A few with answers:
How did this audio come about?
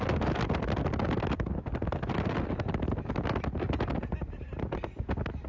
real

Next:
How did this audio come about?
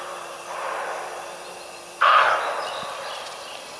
real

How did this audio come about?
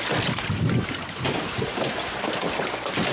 real